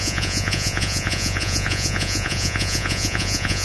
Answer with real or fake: fake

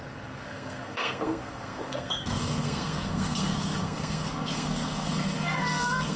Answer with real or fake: fake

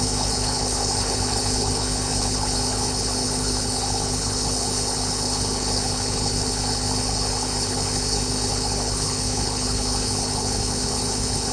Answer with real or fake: fake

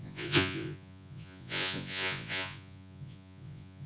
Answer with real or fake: fake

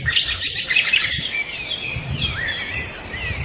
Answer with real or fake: fake